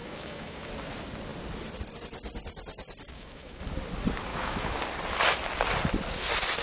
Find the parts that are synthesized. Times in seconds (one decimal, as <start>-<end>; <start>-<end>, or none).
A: 0.0-0.7; 3.1-3.6; 4.3-4.8